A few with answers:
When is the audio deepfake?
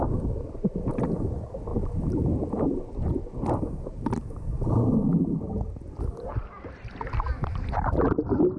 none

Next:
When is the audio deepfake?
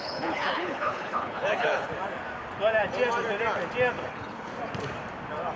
0.0-1.9 (codec, HILCodec); 4.1-4.5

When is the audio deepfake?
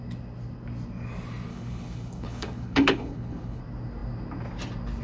1.5-3.6 (codec, HILCodec)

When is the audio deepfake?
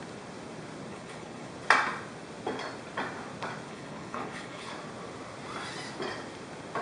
0.9-1.5 (codec, HILCodec); 3.7-4.7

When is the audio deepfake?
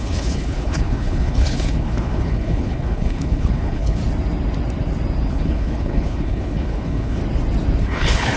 0.0-4.0 (codec, HILCodec); 5.3-7.2; 7.8-8.4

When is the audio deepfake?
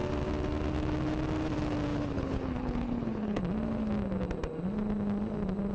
1.9-3.4 (codec, HILCodec)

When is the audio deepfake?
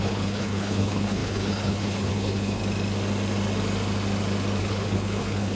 0.0-2.6 (codec, HILCodec); 4.6-5.5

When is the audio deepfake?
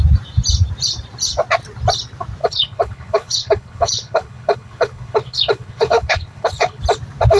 2.4-6.8 (codec, HILCodec)